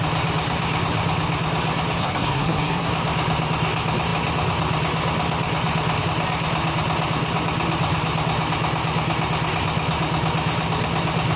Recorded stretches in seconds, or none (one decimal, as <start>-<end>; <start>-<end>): 0.0-2.0; 2.9-11.4